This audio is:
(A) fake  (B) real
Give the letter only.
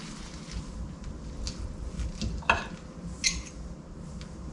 B